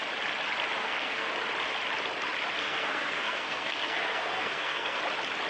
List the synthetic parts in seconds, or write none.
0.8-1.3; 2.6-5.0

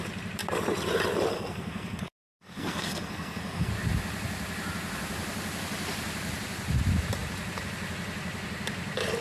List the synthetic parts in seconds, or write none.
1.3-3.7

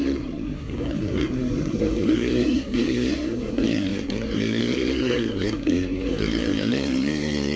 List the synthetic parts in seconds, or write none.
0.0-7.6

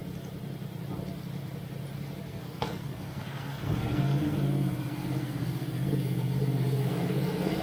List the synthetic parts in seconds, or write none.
2.2-7.6

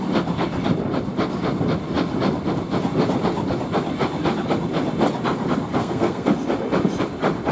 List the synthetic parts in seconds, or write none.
5.8-6.3

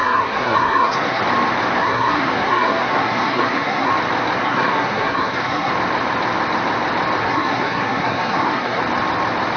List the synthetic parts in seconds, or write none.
0.0-1.2; 1.8-3.9; 4.4-5.7; 7.2-8.8

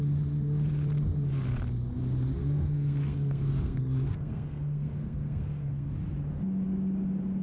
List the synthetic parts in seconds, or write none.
2.4-5.9

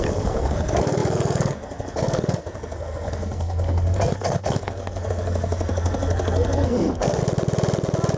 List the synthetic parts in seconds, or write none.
0.0-7.2